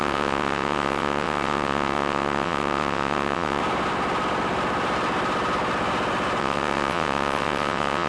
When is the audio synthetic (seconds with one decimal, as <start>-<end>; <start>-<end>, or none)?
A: 0.0-3.6; 6.4-8.1